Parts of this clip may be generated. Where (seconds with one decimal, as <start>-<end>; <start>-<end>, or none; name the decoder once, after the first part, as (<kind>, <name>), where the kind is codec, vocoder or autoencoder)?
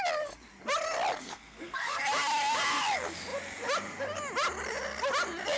1.2-2.0 (codec, SNAC)